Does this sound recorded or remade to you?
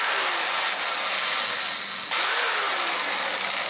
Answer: recorded